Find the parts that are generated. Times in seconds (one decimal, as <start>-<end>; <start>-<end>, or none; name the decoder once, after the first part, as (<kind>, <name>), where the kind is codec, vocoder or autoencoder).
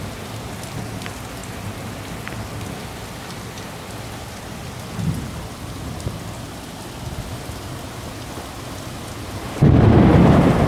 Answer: none